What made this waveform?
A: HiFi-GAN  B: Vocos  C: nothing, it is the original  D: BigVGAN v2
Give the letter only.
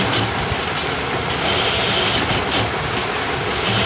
C